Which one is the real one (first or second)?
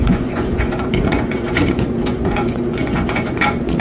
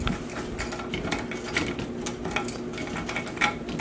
second